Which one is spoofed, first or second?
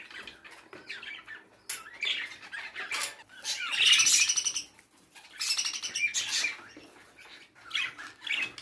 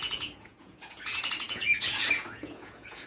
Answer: second